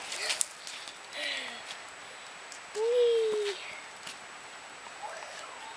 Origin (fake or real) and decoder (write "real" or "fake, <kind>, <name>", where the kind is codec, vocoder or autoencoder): real